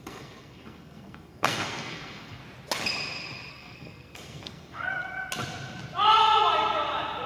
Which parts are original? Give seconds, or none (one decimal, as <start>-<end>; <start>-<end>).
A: 2.4-3.5; 4.9-7.3